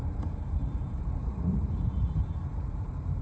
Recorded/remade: remade